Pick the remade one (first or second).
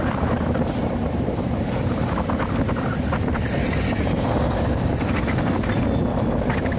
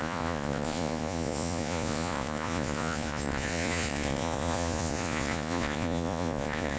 second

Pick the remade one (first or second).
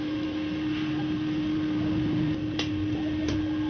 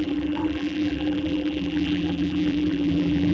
second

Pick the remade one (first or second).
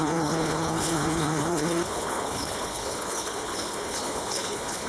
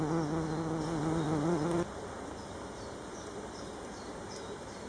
first